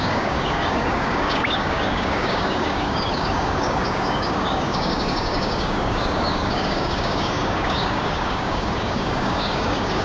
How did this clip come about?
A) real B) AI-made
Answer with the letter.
B